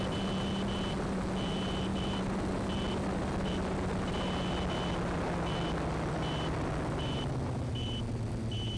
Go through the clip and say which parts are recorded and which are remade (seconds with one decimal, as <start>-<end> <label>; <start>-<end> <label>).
0.0-8.8 recorded